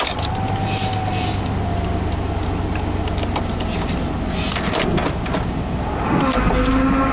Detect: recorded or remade recorded